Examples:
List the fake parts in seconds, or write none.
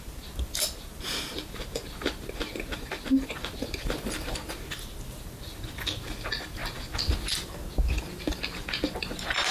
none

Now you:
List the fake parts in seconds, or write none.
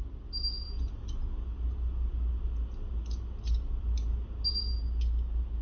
none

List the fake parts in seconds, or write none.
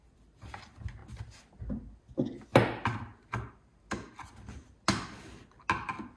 none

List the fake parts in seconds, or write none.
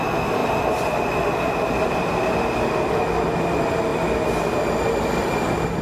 none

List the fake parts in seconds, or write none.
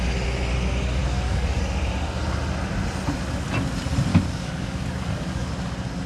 1.0-1.6 (codec, DAC); 4.1-5.5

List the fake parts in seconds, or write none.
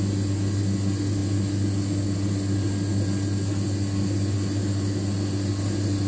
none